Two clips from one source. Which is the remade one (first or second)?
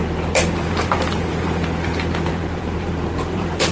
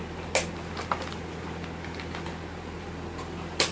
first